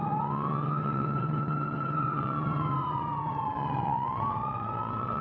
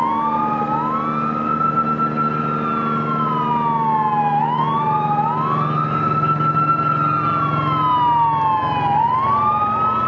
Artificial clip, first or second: first